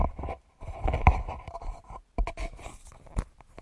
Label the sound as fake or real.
real